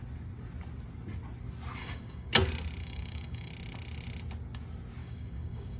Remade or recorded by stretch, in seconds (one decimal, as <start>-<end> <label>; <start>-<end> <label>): 0.0-1.8 recorded; 1.8-2.3 remade; 2.3-2.8 recorded; 2.8-3.5 remade; 3.5-5.0 recorded; 5.0-5.8 remade